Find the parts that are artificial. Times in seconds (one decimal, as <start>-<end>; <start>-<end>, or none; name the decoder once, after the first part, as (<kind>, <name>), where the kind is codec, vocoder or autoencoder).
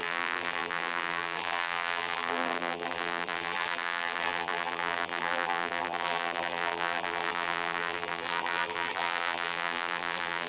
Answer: 0.0-10.5 (vocoder, BigVGAN v2)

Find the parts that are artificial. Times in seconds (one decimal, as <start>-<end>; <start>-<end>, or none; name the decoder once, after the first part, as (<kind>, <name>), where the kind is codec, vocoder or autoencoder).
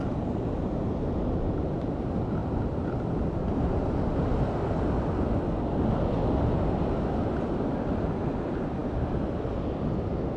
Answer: none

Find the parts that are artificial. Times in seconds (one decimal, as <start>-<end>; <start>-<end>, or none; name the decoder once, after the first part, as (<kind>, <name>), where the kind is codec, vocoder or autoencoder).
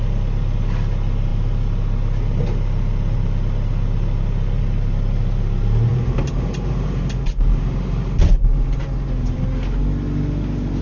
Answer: 5.9-7.2 (vocoder, BigVGAN v2)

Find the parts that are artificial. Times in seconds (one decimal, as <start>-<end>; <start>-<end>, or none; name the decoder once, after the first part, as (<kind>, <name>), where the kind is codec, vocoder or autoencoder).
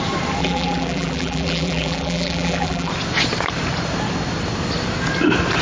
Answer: 0.4-2.9 (vocoder, BigVGAN v2)